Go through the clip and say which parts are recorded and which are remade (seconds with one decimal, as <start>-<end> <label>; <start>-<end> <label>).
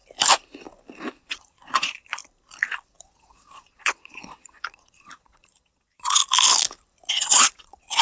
0.0-1.2 recorded; 1.2-2.2 remade; 2.2-3.0 recorded; 3.0-6.2 remade; 6.2-7.1 recorded; 7.1-8.0 remade